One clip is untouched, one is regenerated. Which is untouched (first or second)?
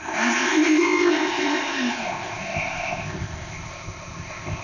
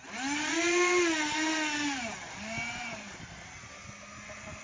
second